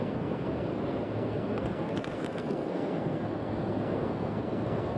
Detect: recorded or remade remade